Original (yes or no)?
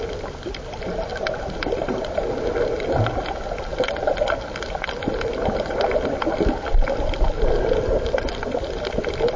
yes